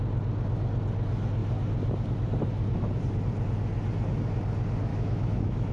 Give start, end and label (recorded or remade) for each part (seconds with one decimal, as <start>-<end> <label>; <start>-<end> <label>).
0.0-4.9 recorded; 4.9-5.7 remade